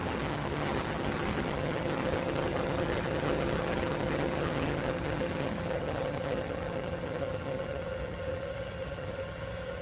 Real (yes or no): no